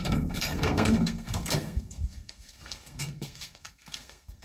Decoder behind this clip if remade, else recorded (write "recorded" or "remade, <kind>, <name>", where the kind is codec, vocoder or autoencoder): remade, codec, SNAC